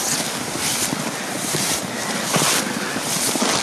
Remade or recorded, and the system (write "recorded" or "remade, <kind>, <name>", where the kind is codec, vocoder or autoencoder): recorded